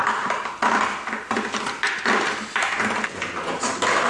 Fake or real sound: real